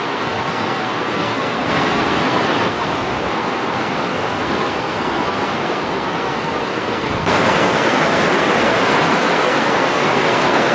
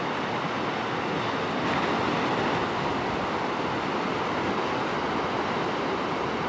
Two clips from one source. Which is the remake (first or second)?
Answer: first